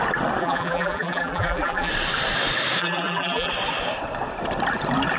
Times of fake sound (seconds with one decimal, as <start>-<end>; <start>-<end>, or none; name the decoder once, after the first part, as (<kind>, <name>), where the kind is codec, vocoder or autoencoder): 0.4-1.9 (vocoder, BigVGAN v2); 2.8-3.5